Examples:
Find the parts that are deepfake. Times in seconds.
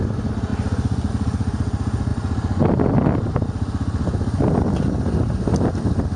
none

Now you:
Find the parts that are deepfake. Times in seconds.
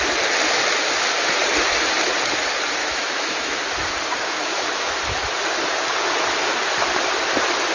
2.8-3.6 (autoencoder, DAC-VAE); 4.4-5.0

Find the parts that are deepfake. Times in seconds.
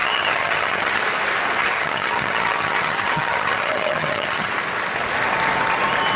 0.0-1.0 (vocoder, HiFi-GAN); 1.6-4.5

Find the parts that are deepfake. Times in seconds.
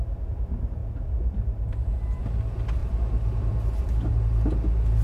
0.8-2.2 (vocoder, BigVGAN v2); 2.8-4.1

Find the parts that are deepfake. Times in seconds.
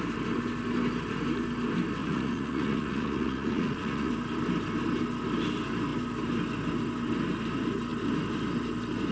2.0-4.1 (vocoder, Vocos)